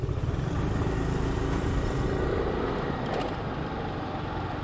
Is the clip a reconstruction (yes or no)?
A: no